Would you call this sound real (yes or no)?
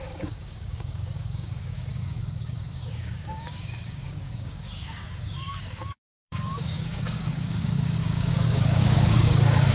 no